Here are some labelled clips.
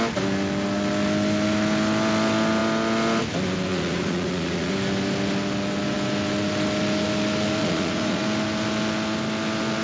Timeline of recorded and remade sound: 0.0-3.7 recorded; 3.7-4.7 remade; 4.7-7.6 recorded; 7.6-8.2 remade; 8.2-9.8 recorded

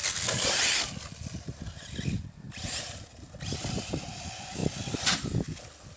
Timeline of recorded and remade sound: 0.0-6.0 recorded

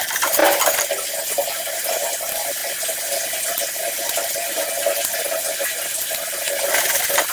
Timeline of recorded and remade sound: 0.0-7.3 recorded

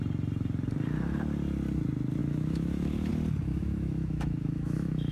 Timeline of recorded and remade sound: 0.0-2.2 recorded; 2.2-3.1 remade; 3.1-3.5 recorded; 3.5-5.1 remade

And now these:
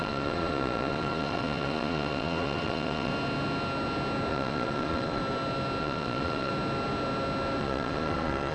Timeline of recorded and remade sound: 0.0-3.1 remade; 3.1-4.3 recorded; 4.3-5.2 remade; 5.2-5.8 recorded; 5.8-6.5 remade; 6.5-7.6 recorded; 7.6-8.5 remade

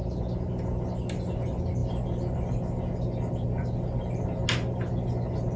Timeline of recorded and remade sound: 0.0-5.6 recorded

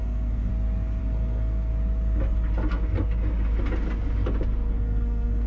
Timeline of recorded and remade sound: 0.0-0.5 remade; 0.5-1.0 recorded; 1.0-1.7 remade; 1.7-4.7 recorded; 4.7-5.5 remade

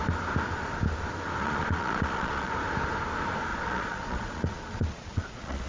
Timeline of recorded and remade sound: 0.0-1.4 recorded; 1.4-2.5 remade; 2.5-3.5 recorded; 3.5-5.7 remade